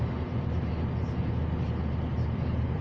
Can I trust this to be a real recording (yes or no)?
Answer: yes